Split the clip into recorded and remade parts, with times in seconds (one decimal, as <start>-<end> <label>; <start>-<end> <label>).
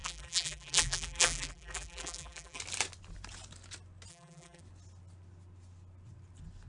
0.0-2.6 remade; 2.6-4.1 recorded; 4.1-4.6 remade; 4.6-6.7 recorded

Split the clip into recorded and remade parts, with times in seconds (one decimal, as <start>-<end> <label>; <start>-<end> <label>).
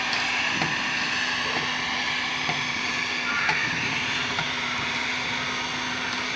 0.0-2.3 recorded; 2.3-2.9 remade; 2.9-3.6 recorded; 3.6-5.1 remade; 5.1-6.4 recorded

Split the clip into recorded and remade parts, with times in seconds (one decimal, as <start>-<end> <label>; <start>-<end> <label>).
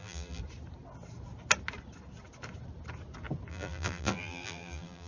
0.0-0.4 remade; 0.4-3.5 recorded; 3.5-5.1 remade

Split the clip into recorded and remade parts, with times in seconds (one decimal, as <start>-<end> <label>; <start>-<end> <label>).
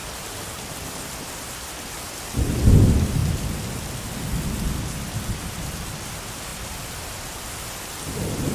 0.0-0.5 recorded; 0.5-3.2 remade; 3.2-4.7 recorded; 4.7-8.5 remade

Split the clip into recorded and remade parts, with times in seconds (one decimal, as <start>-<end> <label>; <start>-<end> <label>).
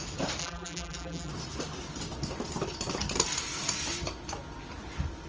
0.0-0.4 recorded; 0.4-1.3 remade; 1.3-5.3 recorded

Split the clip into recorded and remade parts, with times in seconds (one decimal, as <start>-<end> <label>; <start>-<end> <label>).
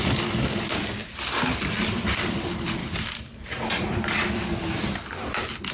0.0-2.8 remade; 2.8-3.8 recorded; 3.8-5.7 remade